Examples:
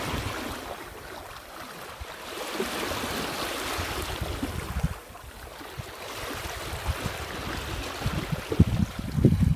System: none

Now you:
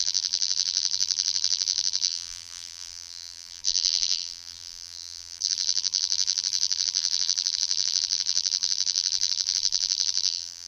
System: vocoder, BigVGAN v2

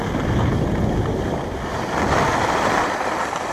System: none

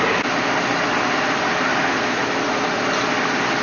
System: none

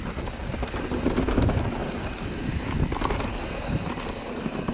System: none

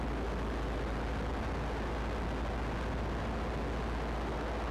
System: none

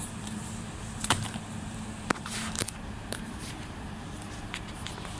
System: vocoder, BigVGAN v2